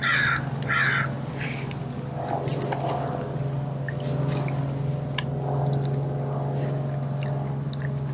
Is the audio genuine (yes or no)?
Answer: yes